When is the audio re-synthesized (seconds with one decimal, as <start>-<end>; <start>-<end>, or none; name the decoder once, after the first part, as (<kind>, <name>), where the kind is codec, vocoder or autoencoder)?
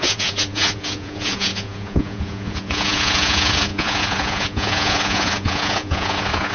0.0-6.5 (vocoder, Vocos)